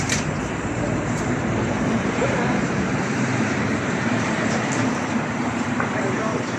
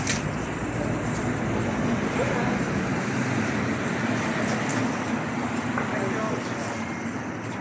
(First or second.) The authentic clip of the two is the second